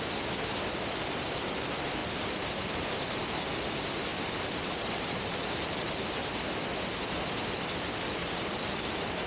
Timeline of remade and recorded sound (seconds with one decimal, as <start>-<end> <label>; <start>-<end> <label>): 0.0-2.0 recorded; 2.0-3.0 remade; 3.0-4.1 recorded; 4.1-5.9 remade; 5.9-8.2 recorded; 8.2-8.7 remade; 8.7-9.3 recorded